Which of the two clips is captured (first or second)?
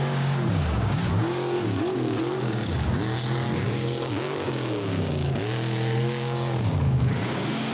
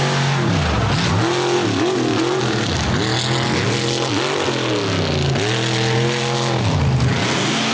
second